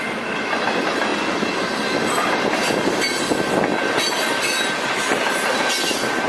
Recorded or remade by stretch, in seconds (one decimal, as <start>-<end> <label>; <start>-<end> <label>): 0.0-6.3 recorded